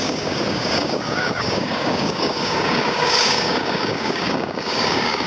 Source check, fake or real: fake